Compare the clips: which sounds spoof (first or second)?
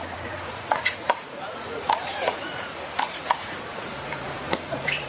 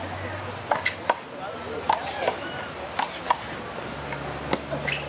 first